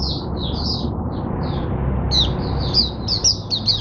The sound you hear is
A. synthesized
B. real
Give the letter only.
B